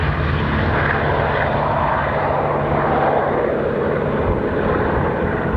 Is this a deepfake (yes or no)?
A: no